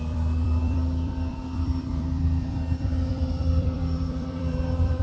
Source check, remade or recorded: remade